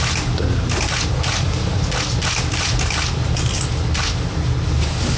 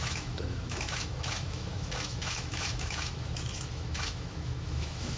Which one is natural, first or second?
first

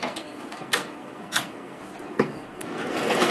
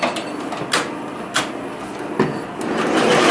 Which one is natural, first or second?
second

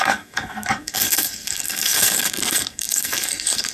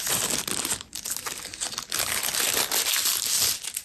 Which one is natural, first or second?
second